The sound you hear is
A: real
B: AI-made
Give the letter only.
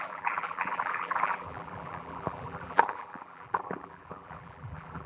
B